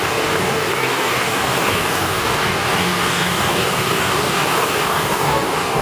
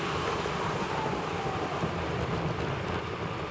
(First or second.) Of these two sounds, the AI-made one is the first